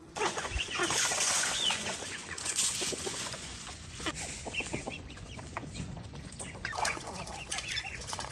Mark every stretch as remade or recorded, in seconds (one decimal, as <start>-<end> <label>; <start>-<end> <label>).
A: 0.0-8.3 remade